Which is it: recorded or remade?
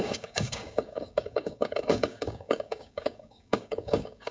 remade